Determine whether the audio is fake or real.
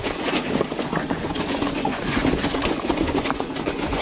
fake